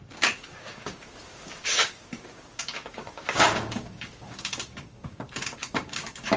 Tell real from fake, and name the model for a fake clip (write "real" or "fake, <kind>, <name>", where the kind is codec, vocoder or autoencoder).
fake, codec, DAC